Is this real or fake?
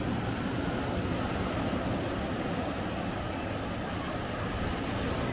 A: real